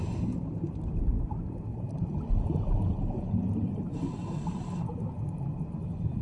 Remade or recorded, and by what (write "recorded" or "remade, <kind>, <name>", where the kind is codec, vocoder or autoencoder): recorded